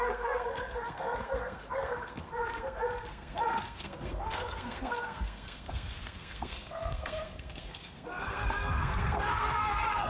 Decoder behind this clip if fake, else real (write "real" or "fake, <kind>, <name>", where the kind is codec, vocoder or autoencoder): fake, codec, SNAC